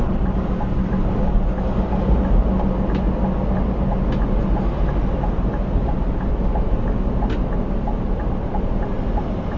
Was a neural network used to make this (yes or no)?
no